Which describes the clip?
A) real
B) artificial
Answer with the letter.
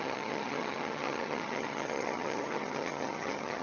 B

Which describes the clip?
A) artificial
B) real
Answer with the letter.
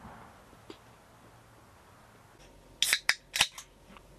B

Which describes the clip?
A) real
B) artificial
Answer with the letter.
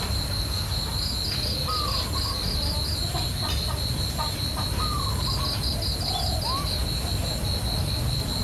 A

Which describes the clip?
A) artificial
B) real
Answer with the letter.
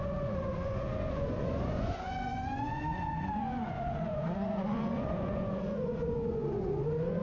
A